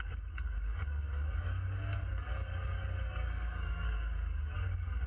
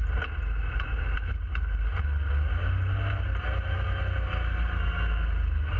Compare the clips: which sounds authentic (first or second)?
second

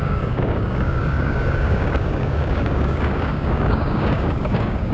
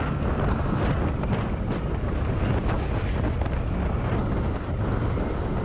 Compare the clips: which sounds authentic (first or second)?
second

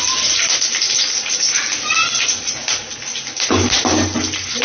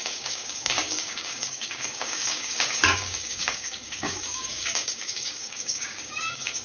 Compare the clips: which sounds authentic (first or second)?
first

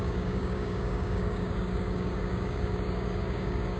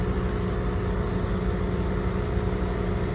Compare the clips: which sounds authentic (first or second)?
second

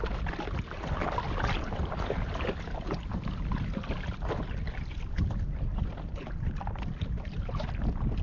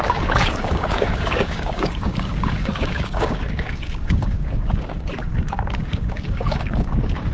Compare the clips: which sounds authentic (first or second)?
first